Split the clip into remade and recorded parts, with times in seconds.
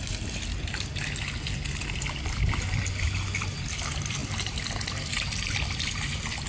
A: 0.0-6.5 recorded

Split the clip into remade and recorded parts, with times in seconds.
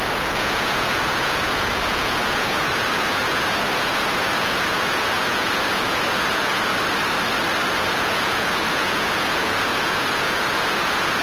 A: 0.0-6.7 remade; 6.7-7.7 recorded; 7.7-11.2 remade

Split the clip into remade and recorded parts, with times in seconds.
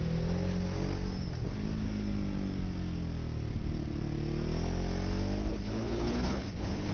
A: 0.0-5.5 recorded; 5.5-6.9 remade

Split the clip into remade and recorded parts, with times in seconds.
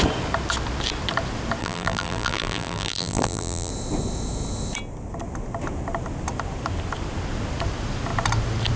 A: 0.0-1.6 recorded; 1.6-3.7 remade; 3.7-8.8 recorded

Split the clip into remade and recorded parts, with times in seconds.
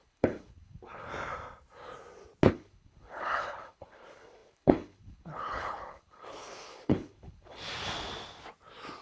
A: 0.0-1.1 remade; 1.1-2.5 recorded; 2.5-7.6 remade; 7.6-9.0 recorded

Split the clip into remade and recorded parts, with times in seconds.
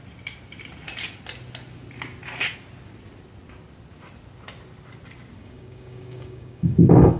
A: 0.0-5.4 recorded; 5.4-7.2 remade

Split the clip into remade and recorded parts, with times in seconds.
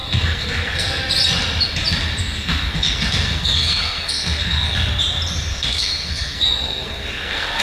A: 0.0-1.0 remade; 1.0-2.2 recorded; 2.2-4.9 remade; 4.9-5.5 recorded; 5.5-7.6 remade